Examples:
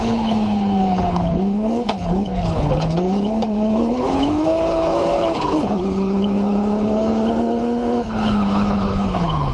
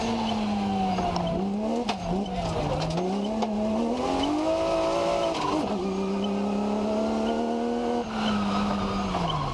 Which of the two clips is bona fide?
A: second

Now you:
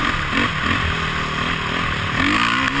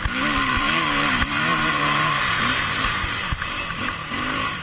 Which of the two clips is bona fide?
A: first